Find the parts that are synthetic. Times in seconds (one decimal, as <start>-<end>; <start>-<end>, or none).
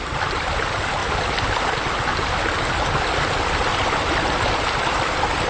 0.0-1.0; 3.4-5.5